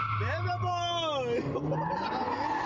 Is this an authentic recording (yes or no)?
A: yes